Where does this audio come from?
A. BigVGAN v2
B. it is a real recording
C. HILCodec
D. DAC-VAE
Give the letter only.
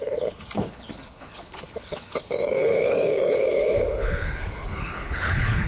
C